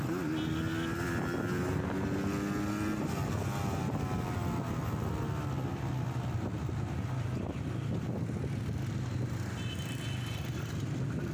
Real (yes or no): yes